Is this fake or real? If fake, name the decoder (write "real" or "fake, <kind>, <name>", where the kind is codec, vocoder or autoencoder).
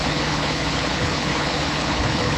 fake, codec, HILCodec